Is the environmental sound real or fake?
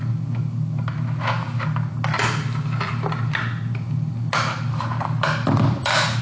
real